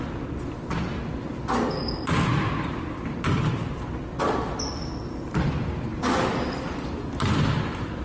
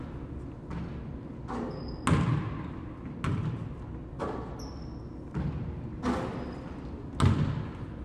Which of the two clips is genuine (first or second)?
second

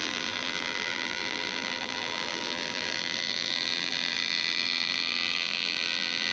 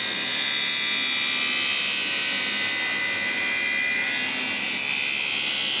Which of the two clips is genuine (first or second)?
second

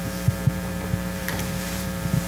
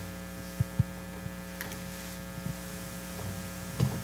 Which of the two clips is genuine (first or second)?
second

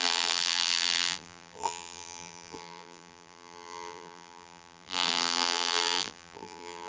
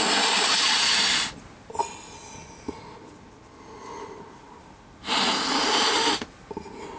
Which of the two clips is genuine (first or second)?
second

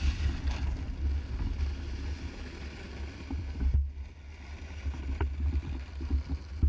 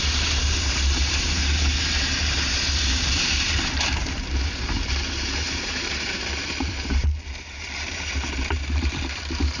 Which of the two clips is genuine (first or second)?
first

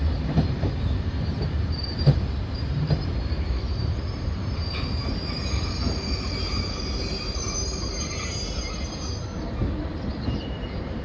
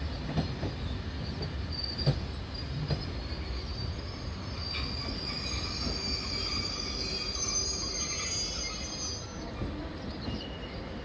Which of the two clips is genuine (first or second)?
second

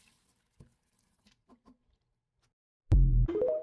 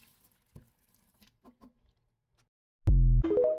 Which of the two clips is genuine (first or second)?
second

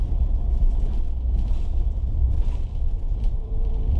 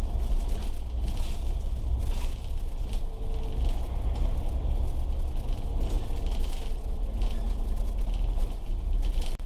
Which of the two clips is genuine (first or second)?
second